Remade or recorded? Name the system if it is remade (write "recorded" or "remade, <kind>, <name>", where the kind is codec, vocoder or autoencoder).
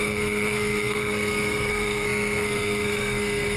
remade, codec, SNAC